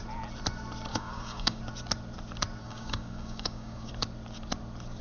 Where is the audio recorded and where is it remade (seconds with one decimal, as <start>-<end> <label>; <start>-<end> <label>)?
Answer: 0.0-0.9 recorded; 0.9-1.6 remade; 1.6-2.6 recorded; 2.6-3.9 remade; 3.9-5.0 recorded